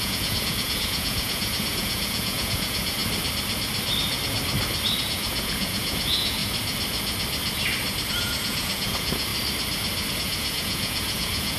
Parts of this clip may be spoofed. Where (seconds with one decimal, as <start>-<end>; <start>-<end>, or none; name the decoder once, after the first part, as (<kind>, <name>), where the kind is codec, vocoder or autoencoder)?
0.0-3.0 (vocoder, Vocos); 5.0-6.4; 8.1-9.3; 10.1-11.6